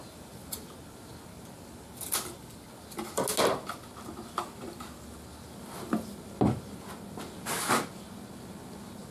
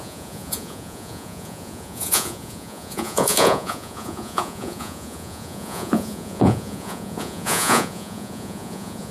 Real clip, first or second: first